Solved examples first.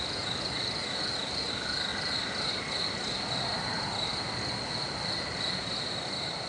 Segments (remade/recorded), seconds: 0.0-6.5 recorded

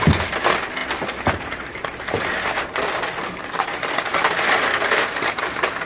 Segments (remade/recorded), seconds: 0.0-5.9 recorded

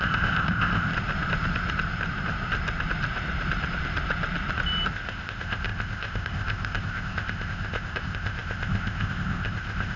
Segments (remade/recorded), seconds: 0.0-0.9 remade; 0.9-4.9 recorded; 4.9-10.0 remade

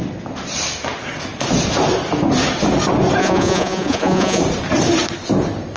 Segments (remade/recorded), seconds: 0.0-3.2 recorded; 3.2-4.4 remade; 4.4-5.8 recorded

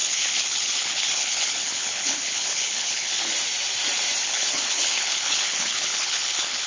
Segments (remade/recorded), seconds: 0.0-3.3 remade; 3.3-4.2 recorded; 4.2-6.7 remade

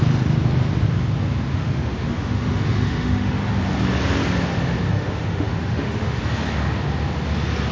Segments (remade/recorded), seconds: 0.0-1.5 recorded; 1.5-3.4 remade; 3.4-4.9 recorded; 4.9-6.2 remade; 6.2-7.7 recorded